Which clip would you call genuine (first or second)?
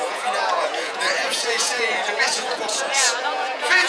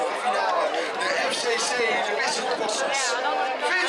second